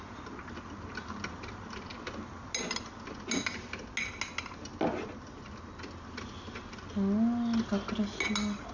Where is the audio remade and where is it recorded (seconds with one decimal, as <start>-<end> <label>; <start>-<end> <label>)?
0.0-8.7 recorded